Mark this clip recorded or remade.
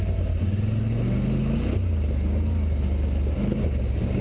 recorded